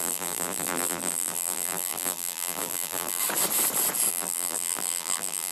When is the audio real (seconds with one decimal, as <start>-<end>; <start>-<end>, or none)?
3.2-4.1